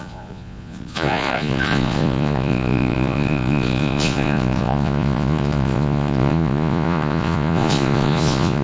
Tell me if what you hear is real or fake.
fake